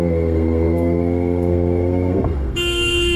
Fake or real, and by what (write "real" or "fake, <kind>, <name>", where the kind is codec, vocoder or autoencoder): fake, codec, SNAC